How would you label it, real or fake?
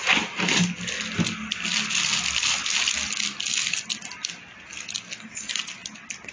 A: real